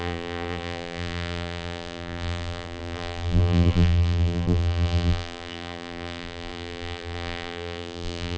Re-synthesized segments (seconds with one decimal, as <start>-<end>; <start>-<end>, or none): 0.0-8.4